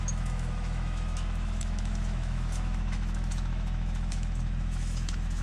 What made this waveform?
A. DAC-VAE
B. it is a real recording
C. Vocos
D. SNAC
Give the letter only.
A